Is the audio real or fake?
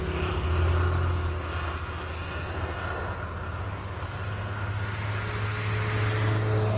real